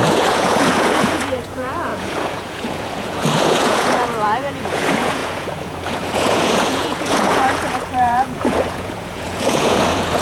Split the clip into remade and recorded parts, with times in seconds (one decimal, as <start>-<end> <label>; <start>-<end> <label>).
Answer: 0.0-10.2 remade